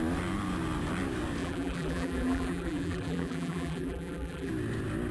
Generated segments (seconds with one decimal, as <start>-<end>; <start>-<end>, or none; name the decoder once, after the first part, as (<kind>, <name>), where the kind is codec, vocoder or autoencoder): 1.4-4.5 (vocoder, BigVGAN v2)